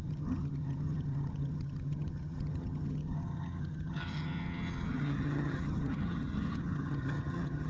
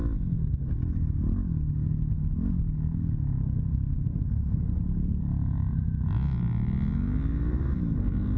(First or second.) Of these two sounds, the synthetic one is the first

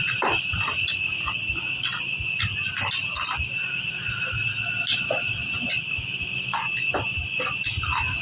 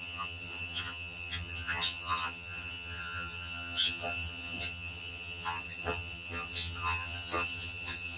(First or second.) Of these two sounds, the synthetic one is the second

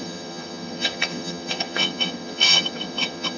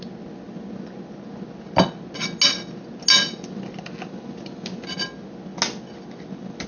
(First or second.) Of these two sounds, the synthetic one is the first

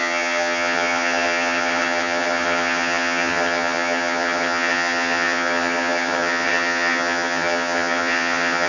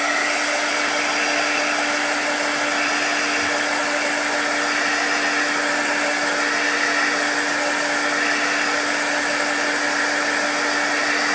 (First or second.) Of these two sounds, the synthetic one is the first